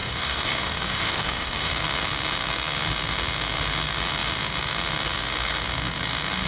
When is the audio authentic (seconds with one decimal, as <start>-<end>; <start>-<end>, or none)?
1.7-6.5